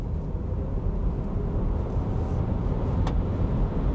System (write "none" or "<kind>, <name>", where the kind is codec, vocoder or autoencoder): none